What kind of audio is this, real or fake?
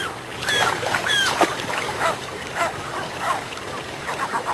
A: fake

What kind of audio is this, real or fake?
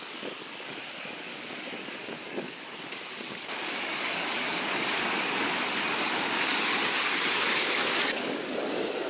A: fake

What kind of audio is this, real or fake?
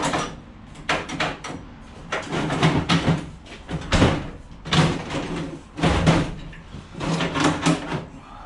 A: real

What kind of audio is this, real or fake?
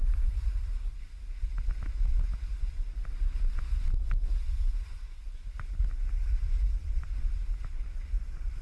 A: real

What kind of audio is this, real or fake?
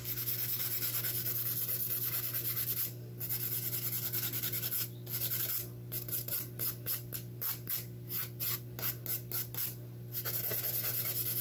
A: real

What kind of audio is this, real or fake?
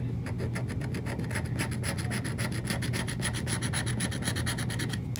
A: real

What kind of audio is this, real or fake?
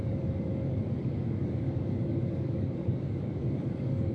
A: fake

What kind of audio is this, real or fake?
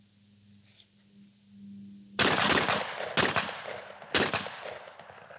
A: real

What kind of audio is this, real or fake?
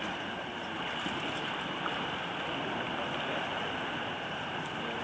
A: real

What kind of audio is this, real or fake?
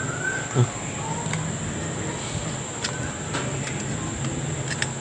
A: real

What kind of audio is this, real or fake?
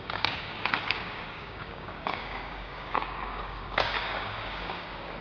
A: fake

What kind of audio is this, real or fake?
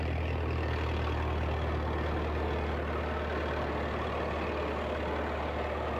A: real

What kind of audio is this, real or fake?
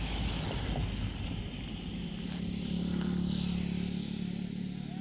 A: real